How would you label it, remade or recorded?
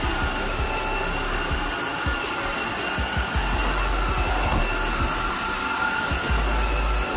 recorded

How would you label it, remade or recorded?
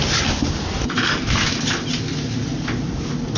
recorded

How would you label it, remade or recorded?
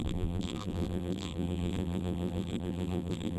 remade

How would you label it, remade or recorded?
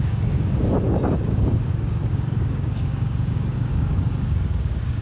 remade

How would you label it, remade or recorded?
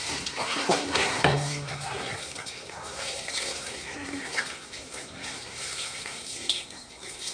remade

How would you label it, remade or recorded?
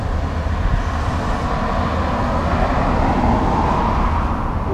recorded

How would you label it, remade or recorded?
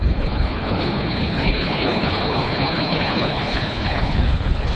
remade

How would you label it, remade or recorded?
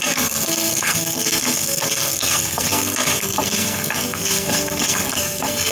remade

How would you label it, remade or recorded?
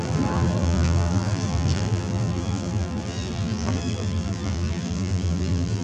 remade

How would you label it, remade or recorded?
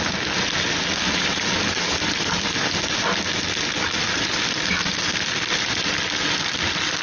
recorded